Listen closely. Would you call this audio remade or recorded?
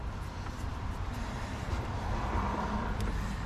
remade